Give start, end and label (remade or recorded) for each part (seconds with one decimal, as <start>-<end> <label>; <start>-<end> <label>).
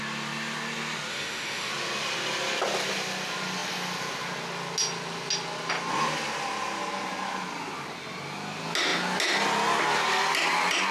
0.0-1.1 recorded; 1.1-1.7 remade; 1.7-10.9 recorded